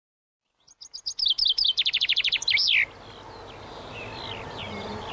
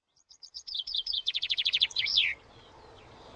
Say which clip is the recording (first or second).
first